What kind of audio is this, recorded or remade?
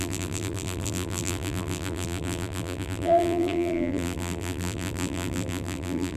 remade